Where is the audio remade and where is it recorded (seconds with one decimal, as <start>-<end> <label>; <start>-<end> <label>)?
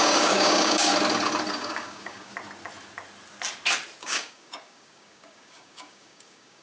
0.0-0.9 remade; 0.9-1.5 recorded; 1.5-2.3 remade; 2.3-4.0 recorded; 4.0-6.6 remade